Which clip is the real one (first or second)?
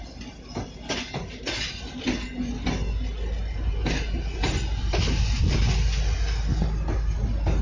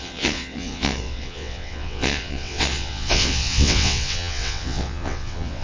first